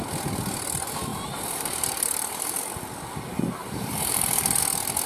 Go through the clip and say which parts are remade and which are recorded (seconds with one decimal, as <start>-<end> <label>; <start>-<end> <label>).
0.0-1.1 recorded; 1.1-2.7 remade; 2.7-3.3 recorded; 3.3-4.6 remade; 4.6-5.1 recorded